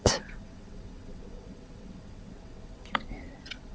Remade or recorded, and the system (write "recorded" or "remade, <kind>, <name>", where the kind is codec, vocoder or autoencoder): remade, vocoder, WaveNeXt